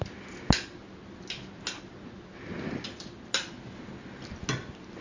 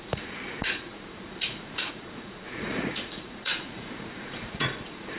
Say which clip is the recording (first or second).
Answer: first